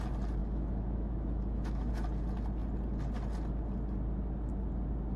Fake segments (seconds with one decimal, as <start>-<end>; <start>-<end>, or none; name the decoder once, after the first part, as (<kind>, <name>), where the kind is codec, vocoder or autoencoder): 0.4-1.9 (autoencoder, DAC-VAE)